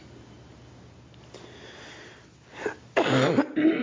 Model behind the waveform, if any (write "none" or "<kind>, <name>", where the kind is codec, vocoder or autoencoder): none